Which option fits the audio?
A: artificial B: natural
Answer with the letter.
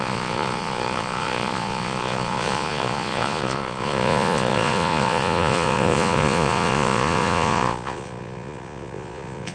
A